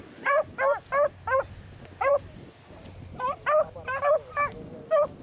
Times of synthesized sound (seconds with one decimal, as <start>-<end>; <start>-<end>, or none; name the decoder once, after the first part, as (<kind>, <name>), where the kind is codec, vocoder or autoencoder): none